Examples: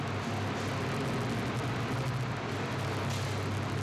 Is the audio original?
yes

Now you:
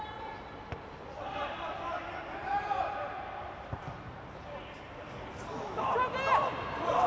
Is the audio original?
yes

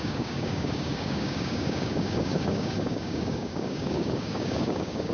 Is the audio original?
no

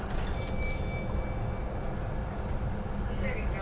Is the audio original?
yes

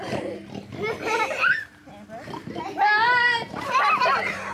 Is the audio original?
yes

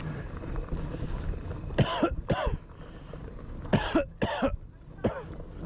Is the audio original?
yes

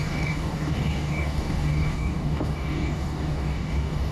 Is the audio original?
no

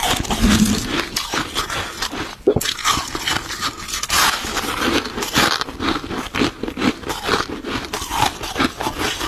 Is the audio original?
yes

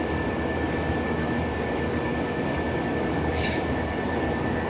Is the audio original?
no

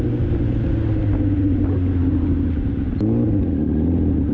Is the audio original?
yes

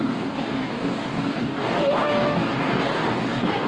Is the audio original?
no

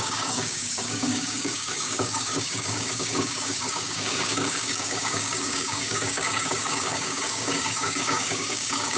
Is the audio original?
no